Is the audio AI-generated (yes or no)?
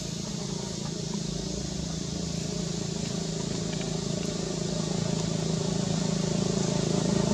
no